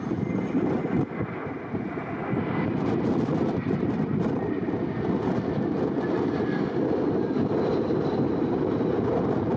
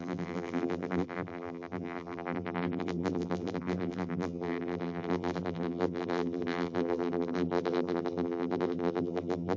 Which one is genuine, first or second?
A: first